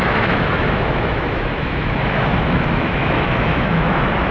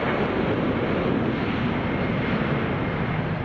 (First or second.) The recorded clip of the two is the second